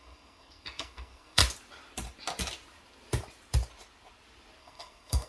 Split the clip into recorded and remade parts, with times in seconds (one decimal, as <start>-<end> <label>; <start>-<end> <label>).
0.0-1.4 remade; 1.4-4.6 recorded; 4.6-5.3 remade